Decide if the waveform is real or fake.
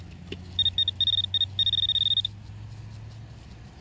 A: real